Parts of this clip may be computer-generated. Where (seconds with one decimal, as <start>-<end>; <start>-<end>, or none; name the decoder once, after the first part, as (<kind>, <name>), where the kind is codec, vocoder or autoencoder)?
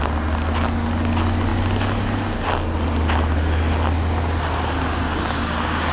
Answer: none